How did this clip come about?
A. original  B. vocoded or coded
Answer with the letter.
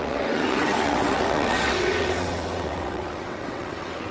B